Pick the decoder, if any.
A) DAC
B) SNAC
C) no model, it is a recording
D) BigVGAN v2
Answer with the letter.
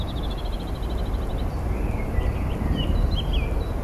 C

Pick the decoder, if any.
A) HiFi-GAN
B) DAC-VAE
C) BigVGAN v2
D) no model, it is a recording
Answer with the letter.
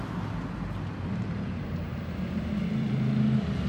D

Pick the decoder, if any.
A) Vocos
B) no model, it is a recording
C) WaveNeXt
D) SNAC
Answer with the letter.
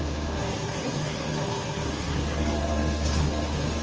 D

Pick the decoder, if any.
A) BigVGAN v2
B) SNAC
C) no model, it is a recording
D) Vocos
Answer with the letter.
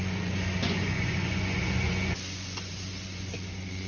D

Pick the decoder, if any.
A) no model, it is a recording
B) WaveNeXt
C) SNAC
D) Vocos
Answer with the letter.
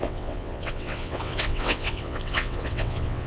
B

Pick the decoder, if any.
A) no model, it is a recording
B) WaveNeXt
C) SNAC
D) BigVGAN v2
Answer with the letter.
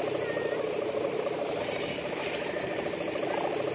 A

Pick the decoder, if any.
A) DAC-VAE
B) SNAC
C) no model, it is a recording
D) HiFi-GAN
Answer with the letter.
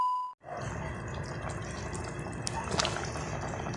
C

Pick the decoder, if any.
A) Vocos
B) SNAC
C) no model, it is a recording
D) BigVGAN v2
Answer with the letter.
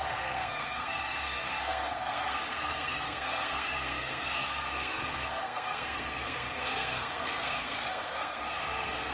B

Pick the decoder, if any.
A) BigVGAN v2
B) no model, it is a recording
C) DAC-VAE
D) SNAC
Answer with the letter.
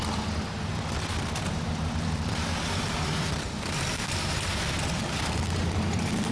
A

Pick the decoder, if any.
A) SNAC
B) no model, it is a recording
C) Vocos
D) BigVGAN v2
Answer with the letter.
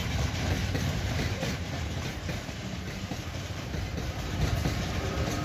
D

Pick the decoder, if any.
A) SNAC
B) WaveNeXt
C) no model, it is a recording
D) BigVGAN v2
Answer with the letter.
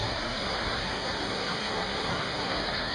A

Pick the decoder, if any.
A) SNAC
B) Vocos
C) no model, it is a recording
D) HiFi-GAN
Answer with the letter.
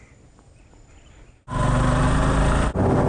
C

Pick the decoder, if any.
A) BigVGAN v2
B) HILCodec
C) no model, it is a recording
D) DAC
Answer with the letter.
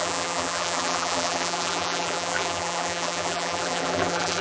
A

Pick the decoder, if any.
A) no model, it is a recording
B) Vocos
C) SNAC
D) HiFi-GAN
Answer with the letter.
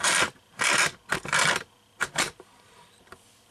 A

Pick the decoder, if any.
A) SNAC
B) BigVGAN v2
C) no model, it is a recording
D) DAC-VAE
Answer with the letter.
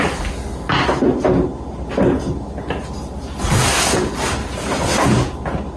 C